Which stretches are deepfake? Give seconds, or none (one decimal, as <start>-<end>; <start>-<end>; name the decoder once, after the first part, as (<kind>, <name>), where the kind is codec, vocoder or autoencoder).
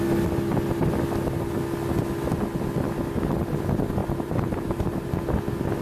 4.0-5.1 (vocoder, BigVGAN v2)